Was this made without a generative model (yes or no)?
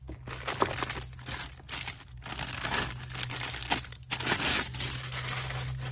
yes